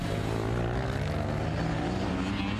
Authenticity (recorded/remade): recorded